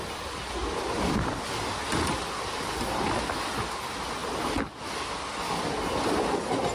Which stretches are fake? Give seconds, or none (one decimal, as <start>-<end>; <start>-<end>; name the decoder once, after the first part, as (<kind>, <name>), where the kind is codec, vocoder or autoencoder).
none